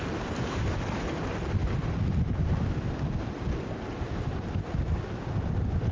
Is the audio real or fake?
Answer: real